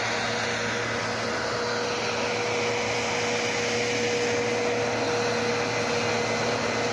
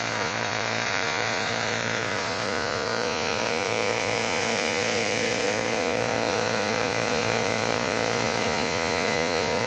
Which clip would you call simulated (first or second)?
second